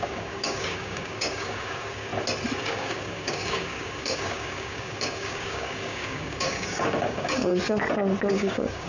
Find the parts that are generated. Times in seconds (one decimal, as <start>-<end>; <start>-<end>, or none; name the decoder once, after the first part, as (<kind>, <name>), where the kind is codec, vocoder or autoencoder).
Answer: 0.0-2.1 (codec, DAC); 2.6-7.5; 8.3-8.9